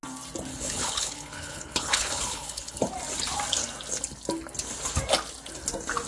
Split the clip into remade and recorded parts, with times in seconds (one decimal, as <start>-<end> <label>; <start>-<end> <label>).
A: 0.0-0.5 recorded; 0.5-2.8 remade; 2.8-6.1 recorded